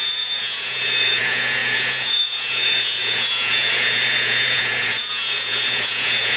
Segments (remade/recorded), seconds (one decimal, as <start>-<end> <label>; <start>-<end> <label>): 0.0-6.4 remade